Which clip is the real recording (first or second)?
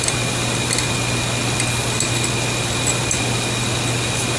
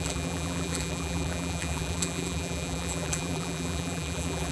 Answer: first